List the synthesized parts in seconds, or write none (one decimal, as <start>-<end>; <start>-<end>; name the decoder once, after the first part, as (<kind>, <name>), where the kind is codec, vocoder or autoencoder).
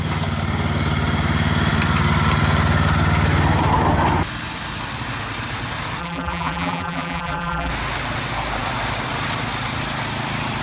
6.0-7.7 (vocoder, BigVGAN v2)